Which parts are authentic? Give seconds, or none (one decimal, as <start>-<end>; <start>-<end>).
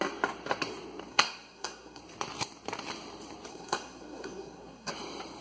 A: 0.0-1.1; 2.0-3.5; 4.9-5.4